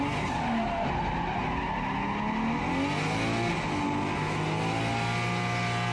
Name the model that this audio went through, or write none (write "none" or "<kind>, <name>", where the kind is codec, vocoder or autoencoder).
none